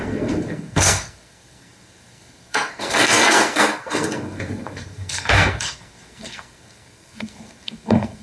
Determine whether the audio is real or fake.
fake